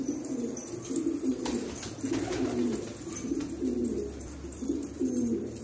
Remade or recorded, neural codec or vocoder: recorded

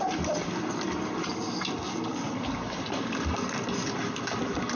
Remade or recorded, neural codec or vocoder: recorded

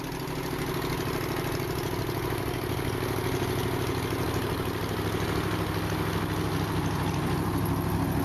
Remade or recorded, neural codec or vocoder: recorded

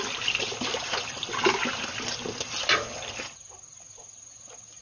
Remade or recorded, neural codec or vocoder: recorded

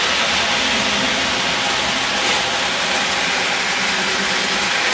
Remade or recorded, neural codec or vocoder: recorded